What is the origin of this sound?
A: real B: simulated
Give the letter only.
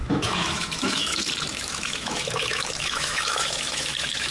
B